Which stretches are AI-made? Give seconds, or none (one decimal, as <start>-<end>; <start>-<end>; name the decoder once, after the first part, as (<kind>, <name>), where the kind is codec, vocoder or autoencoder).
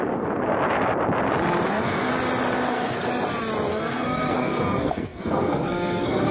0.0-0.5 (codec, SNAC); 1.7-2.1; 2.7-3.1; 3.7-6.3